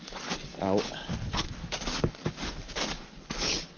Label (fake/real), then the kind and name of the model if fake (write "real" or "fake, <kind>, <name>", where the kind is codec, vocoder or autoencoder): fake, codec, DAC